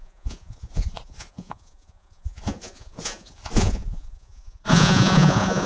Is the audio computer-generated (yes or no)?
yes